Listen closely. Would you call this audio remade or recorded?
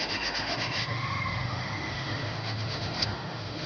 remade